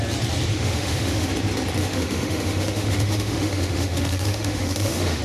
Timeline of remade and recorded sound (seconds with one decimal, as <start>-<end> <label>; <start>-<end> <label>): 0.0-0.5 recorded; 0.5-1.3 remade; 1.3-1.8 recorded; 1.8-5.2 remade